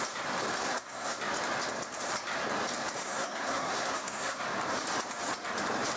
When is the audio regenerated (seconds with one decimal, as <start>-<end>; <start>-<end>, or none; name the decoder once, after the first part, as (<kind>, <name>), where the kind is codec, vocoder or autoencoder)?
0.6-1.2 (codec, SNAC); 3.0-4.4